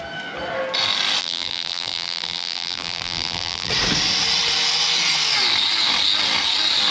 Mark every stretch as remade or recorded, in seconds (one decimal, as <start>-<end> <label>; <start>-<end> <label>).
0.0-1.2 recorded; 1.2-3.7 remade; 3.7-6.9 recorded

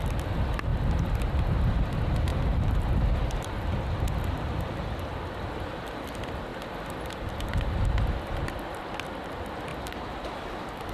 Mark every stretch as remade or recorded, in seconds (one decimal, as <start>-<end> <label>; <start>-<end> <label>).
0.0-2.3 recorded; 2.3-2.9 remade; 2.9-9.7 recorded; 9.7-10.9 remade

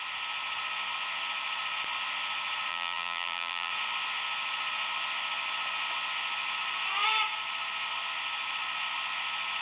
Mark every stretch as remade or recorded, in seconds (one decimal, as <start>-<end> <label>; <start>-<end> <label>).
0.0-2.7 recorded; 2.7-3.7 remade; 3.7-9.6 recorded

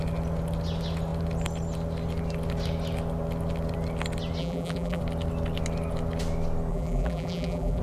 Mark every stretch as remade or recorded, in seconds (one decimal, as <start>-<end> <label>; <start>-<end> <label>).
0.0-4.4 recorded; 4.4-5.0 remade; 5.0-6.7 recorded; 6.7-7.8 remade

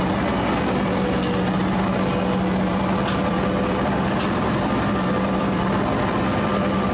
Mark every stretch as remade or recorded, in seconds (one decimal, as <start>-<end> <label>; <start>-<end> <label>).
0.0-2.7 recorded; 2.7-6.9 remade